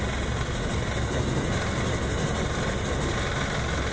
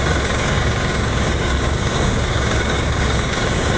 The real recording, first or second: first